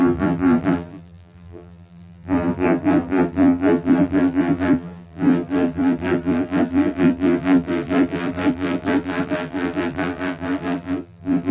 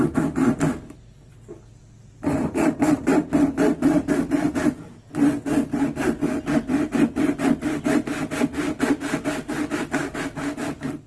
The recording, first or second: second